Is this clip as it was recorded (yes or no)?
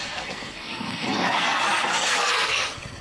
no